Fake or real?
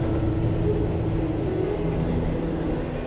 real